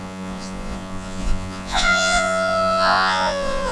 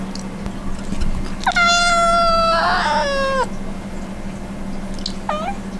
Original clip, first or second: second